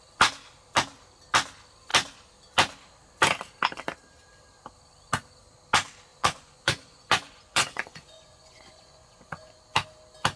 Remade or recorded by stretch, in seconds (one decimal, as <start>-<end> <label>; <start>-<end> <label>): 0.0-6.1 recorded; 6.1-9.6 remade; 9.6-10.4 recorded